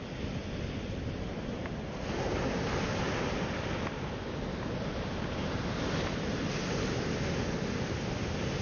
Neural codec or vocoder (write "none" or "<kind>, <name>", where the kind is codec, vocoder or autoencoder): none